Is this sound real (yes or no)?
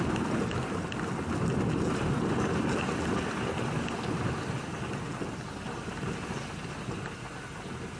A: yes